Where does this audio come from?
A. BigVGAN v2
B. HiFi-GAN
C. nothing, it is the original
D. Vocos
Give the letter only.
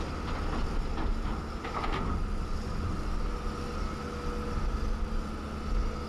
C